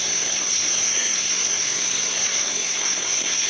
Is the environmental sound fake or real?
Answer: fake